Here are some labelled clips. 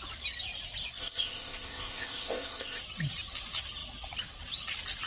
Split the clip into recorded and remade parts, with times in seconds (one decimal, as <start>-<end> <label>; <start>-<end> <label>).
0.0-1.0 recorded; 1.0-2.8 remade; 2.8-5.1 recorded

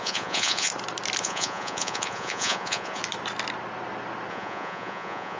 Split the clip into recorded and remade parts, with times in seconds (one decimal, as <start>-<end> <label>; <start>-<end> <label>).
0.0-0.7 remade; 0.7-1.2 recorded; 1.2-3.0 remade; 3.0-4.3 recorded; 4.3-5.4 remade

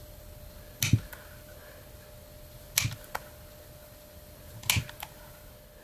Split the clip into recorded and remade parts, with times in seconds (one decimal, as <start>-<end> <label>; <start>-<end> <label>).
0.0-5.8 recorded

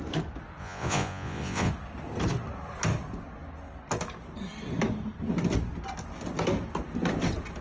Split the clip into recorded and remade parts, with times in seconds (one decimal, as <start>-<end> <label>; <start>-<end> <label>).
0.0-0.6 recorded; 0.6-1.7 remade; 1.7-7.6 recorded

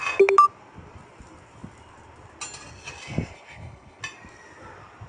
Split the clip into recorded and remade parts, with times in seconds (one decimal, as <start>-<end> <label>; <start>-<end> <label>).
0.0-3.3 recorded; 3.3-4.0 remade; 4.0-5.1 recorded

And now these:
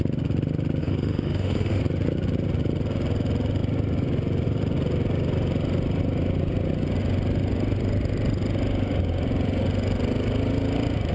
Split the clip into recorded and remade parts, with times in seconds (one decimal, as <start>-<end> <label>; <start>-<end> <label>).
0.0-0.8 recorded; 0.8-1.8 remade; 1.8-11.1 recorded